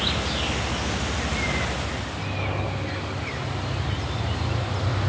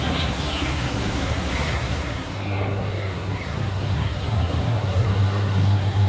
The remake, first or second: second